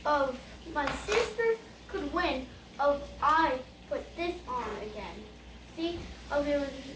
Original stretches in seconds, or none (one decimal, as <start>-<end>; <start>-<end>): 0.0-7.0